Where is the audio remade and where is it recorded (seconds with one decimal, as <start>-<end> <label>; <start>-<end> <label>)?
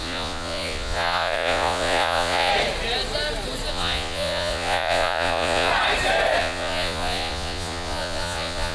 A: 0.0-2.5 remade; 2.5-3.7 recorded; 3.7-5.7 remade; 5.7-6.4 recorded; 6.4-8.7 remade